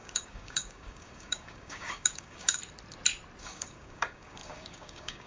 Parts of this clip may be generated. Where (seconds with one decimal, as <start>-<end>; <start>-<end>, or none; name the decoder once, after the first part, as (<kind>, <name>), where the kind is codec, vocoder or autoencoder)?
0.0-2.6 (codec, DAC); 3.4-5.3